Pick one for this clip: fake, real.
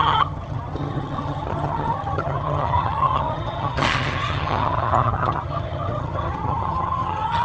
fake